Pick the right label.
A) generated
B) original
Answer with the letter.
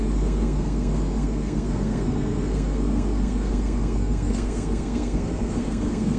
A